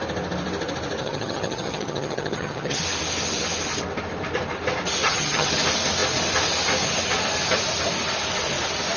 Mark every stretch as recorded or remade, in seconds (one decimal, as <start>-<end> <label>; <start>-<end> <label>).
0.0-1.0 recorded; 1.0-2.8 remade; 2.8-5.0 recorded; 5.0-5.5 remade; 5.5-9.0 recorded